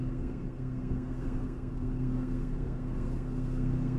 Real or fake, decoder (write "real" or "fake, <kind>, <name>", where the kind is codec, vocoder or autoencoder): fake, codec, SNAC